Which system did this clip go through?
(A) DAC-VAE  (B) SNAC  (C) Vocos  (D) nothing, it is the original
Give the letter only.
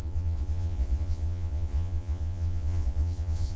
C